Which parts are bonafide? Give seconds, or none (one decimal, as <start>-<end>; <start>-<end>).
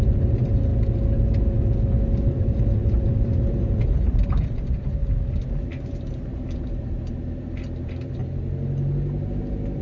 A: 0.7-2.3; 5.0-5.8; 8.2-9.8